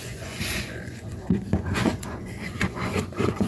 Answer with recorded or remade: remade